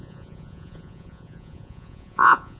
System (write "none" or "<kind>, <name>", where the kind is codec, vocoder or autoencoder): vocoder, Vocos